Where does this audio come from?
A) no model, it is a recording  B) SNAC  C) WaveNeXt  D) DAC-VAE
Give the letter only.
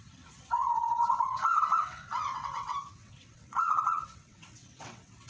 C